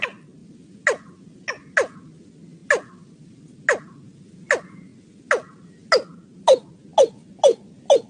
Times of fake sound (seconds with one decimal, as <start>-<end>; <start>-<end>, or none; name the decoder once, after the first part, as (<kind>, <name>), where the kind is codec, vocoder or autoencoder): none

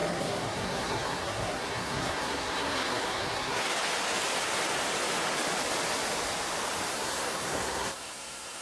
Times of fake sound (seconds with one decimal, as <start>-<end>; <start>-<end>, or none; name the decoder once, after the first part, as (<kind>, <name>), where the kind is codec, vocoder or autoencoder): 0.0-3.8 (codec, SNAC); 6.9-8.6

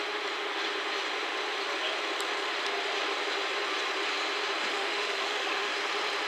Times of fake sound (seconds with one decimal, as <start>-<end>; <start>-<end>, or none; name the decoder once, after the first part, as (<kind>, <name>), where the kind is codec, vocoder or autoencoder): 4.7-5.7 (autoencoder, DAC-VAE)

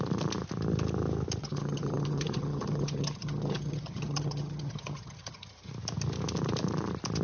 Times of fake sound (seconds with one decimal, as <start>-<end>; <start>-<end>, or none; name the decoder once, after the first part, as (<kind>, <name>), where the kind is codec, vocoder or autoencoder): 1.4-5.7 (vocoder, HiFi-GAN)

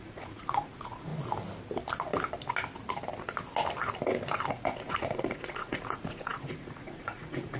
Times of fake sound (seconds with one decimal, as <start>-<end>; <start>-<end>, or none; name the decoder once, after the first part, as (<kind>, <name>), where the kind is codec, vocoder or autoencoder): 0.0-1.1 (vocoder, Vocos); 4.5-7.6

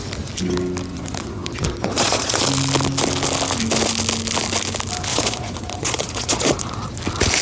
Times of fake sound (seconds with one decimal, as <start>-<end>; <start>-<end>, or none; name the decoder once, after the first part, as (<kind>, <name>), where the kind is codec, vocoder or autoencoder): 0.9-2.4 (vocoder, Vocos); 5.1-7.0

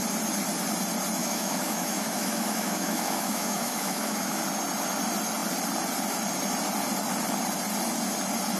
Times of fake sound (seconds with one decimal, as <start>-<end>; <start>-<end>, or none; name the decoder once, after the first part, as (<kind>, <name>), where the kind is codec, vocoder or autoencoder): 1.2-4.4 (autoencoder, DAC-VAE)

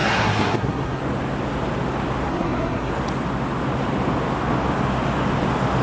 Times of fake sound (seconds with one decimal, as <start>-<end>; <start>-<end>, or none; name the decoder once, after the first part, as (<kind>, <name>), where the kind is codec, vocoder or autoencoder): 0.0-1.0 (codec, SNAC); 2.3-2.9